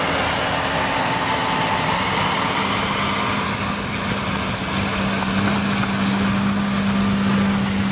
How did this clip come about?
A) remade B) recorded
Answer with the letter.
B